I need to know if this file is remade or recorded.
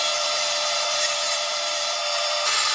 remade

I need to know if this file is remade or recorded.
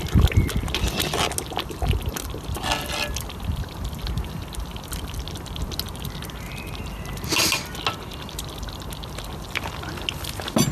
recorded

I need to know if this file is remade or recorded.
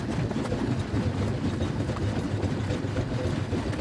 recorded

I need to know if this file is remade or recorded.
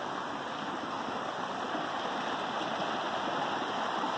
recorded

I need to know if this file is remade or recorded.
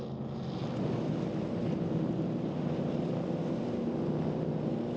recorded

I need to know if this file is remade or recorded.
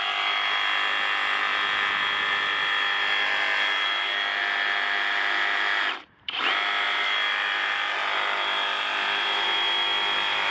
recorded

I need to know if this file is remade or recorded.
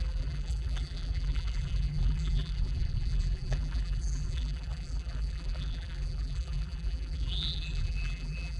remade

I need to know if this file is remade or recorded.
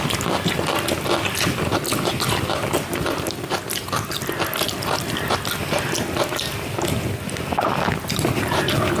recorded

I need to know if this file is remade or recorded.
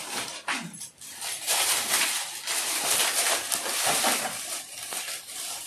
remade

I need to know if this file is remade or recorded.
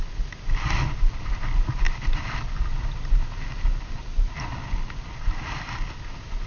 recorded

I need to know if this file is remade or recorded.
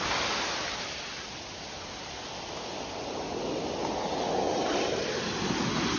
recorded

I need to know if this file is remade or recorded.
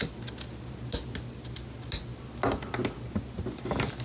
recorded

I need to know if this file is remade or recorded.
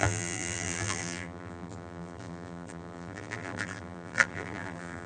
remade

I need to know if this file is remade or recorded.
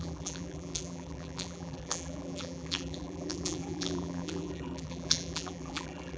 remade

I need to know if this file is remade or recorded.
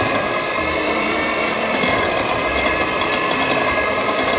remade